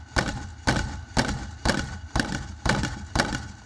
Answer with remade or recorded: recorded